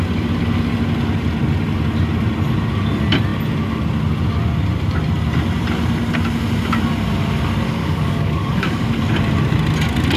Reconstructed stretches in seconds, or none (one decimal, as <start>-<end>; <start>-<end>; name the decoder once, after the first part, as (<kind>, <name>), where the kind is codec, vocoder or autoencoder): 7.8-9.0 (codec, DAC)

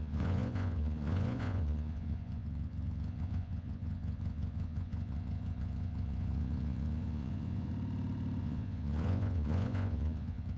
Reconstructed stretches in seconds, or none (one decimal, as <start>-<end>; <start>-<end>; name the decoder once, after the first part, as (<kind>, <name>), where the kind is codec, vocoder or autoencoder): 0.0-7.7 (vocoder, Vocos); 8.4-10.6